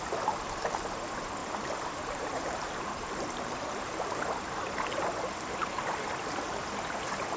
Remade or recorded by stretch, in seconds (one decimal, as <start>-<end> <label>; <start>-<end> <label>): 0.0-1.4 recorded; 1.4-4.2 remade; 4.2-7.4 recorded